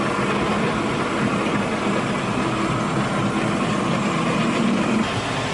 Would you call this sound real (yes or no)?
yes